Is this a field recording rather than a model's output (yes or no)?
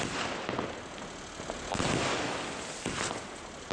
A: yes